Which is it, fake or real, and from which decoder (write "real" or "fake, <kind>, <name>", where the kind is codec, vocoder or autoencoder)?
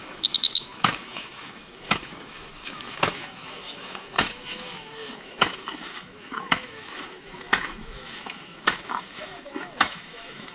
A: fake, autoencoder, DAC-VAE